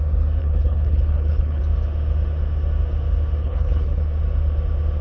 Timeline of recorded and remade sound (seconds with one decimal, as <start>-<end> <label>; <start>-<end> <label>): 0.0-0.4 recorded; 0.4-1.6 remade; 1.6-3.4 recorded; 3.4-4.0 remade; 4.0-5.0 recorded